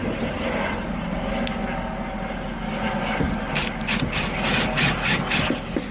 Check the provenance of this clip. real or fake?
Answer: real